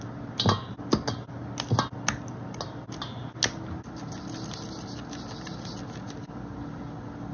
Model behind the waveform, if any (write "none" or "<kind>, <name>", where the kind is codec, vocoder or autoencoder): none